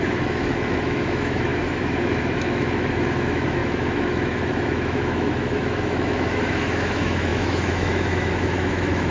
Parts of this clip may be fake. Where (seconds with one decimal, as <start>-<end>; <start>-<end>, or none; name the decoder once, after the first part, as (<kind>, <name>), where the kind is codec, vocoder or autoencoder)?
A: 0.0-9.1 (autoencoder, DAC-VAE)